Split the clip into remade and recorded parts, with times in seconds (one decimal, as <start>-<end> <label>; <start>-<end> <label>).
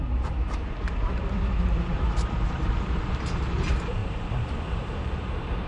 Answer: 0.0-5.7 remade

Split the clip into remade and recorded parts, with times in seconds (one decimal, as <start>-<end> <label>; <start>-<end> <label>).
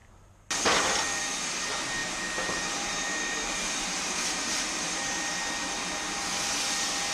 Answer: 0.0-2.0 recorded; 2.0-6.3 remade; 6.3-7.1 recorded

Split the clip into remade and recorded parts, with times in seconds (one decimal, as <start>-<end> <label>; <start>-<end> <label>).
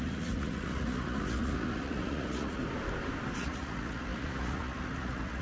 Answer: 0.0-2.6 remade; 2.6-3.4 recorded; 3.4-5.4 remade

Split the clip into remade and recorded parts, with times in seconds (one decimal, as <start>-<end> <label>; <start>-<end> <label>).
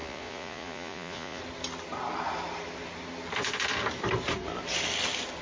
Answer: 0.0-1.4 remade; 1.4-5.4 recorded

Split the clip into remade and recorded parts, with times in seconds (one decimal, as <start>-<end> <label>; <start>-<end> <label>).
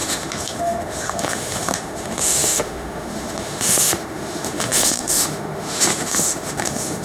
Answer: 0.0-7.0 remade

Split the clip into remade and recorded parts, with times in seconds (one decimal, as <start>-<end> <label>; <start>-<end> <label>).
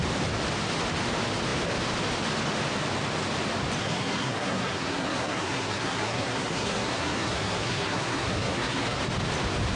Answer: 0.0-3.8 recorded; 3.8-9.0 remade; 9.0-9.8 recorded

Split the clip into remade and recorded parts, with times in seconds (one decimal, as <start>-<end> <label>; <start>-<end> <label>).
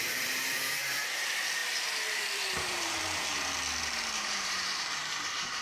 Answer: 0.0-3.0 remade; 3.0-3.8 recorded; 3.8-5.6 remade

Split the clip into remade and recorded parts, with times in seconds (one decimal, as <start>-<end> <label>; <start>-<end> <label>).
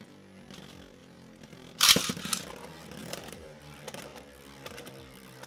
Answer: 0.0-1.0 recorded; 1.0-2.2 remade; 2.2-3.0 recorded; 3.0-3.6 remade; 3.6-5.5 recorded